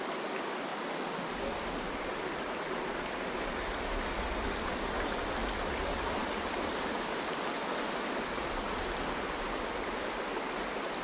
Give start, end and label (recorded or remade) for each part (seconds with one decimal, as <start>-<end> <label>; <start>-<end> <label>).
0.0-11.0 recorded